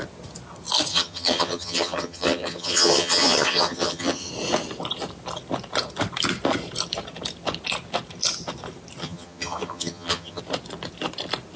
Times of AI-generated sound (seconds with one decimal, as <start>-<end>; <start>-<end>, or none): 0.9-4.3; 9.0-10.4